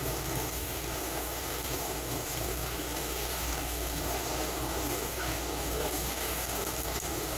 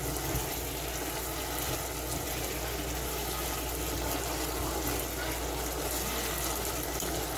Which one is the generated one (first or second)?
first